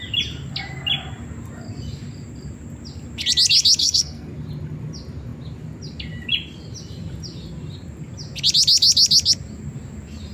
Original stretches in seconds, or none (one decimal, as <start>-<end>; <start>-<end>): 0.0-3.8; 4.3-10.3